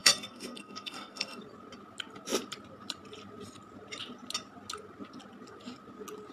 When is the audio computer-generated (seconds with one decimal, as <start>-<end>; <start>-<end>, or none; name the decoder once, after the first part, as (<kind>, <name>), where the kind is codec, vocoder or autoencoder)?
0.0-1.4 (codec, SNAC)

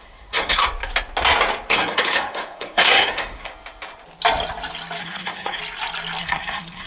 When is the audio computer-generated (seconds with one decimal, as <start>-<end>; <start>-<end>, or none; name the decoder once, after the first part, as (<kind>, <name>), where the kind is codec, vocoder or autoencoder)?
0.0-0.6 (codec, SNAC); 1.7-3.5; 5.0-5.6; 6.2-6.9

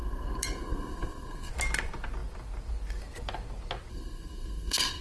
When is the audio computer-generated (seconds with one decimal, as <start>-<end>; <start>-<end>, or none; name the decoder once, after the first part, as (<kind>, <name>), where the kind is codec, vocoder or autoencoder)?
0.0-1.5 (codec, SNAC); 3.9-5.0

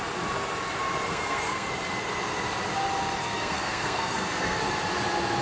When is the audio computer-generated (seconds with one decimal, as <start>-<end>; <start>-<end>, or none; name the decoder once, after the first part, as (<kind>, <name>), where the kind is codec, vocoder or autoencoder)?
1.1-1.7 (codec, SNAC); 3.2-4.6

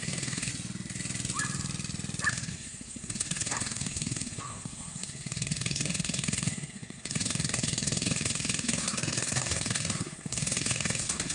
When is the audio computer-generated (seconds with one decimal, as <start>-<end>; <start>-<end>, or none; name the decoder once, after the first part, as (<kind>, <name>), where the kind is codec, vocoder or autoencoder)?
0.0-0.5 (codec, SNAC); 2.3-11.3